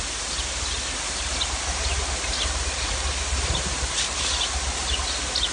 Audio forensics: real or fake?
real